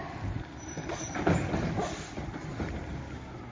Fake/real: real